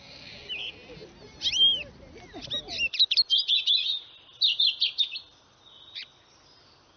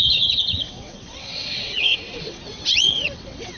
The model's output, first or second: second